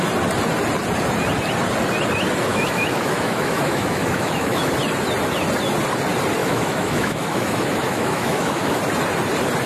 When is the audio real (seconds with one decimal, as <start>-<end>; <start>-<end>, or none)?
0.0-2.5; 4.7-6.4; 8.8-9.7